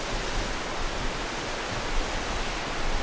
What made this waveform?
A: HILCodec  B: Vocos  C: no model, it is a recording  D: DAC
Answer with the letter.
C